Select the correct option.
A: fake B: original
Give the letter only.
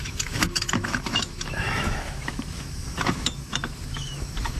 A